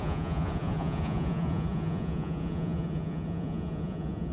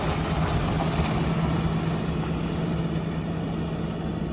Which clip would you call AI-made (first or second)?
first